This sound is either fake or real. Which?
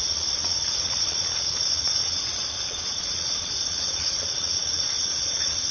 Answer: fake